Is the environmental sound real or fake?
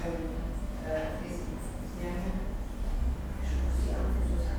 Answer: real